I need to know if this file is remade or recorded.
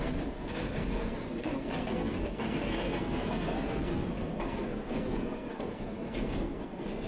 remade